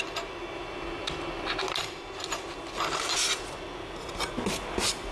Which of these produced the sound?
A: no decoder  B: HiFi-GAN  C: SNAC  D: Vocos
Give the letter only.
A